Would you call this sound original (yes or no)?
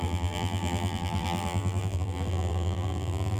no